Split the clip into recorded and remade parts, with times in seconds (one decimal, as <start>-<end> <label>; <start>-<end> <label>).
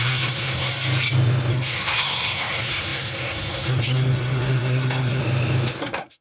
0.0-0.7 remade; 0.7-1.5 recorded; 1.5-5.2 remade; 5.2-5.8 recorded; 5.8-6.2 remade